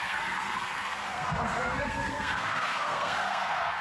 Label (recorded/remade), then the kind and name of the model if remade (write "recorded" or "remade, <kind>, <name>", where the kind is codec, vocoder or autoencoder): remade, codec, SNAC